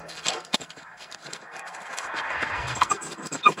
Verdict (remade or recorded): remade